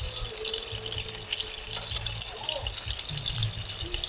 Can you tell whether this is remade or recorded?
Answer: recorded